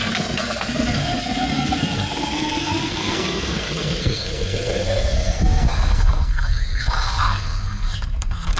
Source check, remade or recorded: remade